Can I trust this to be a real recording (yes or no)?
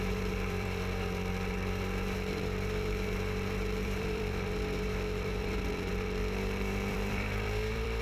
no